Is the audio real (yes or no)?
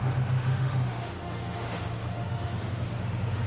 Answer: no